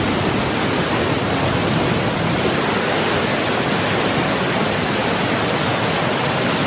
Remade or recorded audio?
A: recorded